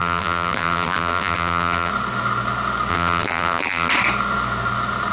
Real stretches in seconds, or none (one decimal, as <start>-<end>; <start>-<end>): 1.9-2.9; 3.9-5.1